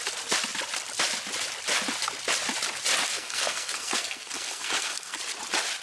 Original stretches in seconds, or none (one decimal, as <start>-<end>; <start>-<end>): 0.0-3.1; 5.2-5.8